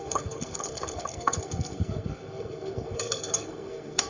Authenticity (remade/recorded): remade